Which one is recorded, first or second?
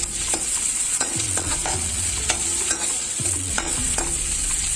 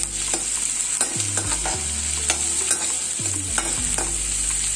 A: second